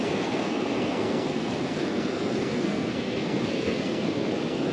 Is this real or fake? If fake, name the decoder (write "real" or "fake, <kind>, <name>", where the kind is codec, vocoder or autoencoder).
fake, codec, SNAC